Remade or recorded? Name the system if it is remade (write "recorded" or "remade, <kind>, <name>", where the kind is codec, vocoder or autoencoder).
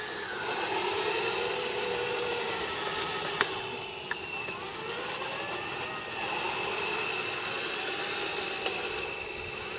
recorded